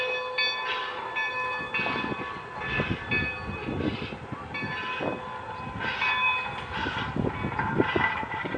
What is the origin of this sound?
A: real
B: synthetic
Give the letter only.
A